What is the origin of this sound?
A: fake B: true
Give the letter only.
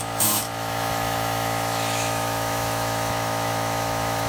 A